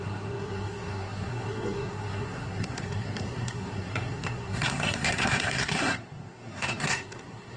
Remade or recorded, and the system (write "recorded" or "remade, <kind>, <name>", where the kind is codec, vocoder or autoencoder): remade, codec, SNAC